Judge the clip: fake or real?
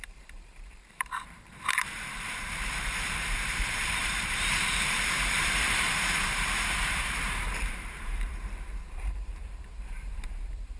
fake